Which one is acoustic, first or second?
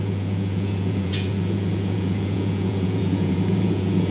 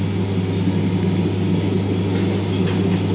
second